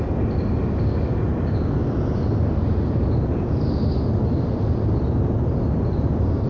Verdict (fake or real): real